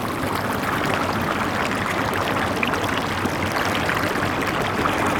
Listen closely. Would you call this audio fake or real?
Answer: real